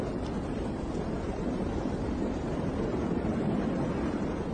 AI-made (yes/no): no